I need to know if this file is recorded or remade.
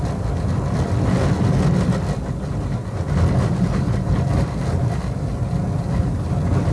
recorded